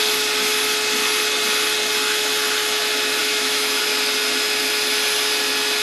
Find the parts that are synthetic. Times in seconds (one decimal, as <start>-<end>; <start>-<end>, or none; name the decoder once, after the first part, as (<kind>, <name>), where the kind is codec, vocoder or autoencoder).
3.2-3.8 (autoencoder, DAC-VAE)